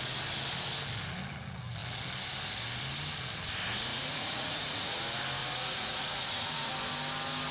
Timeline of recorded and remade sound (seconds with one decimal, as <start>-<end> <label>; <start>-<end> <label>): 0.0-3.9 recorded; 3.9-5.0 remade; 5.0-5.4 recorded; 5.4-6.7 remade; 6.7-7.5 recorded